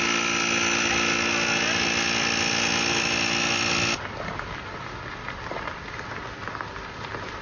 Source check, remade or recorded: recorded